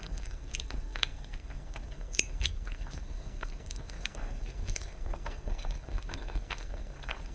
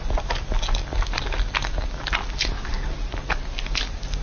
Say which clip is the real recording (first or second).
second